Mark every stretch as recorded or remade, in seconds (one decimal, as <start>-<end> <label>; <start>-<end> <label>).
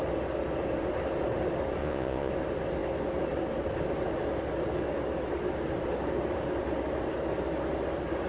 0.0-1.8 recorded; 1.8-2.3 remade; 2.3-8.3 recorded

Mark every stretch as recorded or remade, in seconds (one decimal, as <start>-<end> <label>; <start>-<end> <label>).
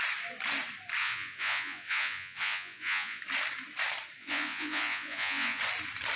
0.0-1.0 recorded; 1.0-3.2 remade; 3.2-4.2 recorded; 4.2-5.6 remade; 5.6-6.2 recorded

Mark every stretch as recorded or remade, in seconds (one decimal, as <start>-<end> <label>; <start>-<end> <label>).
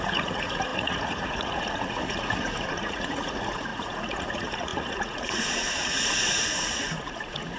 0.0-7.6 remade